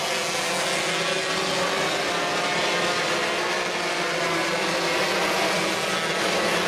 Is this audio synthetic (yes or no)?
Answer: no